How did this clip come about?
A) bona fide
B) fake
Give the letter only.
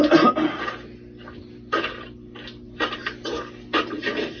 A